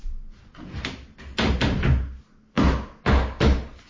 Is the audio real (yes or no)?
yes